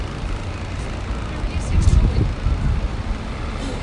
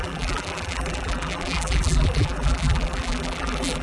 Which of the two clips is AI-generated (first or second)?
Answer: second